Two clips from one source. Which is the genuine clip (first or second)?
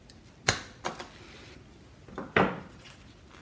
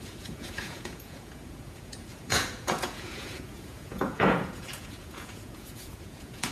first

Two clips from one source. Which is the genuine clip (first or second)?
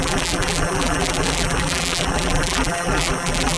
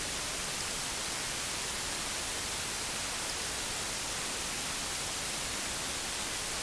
second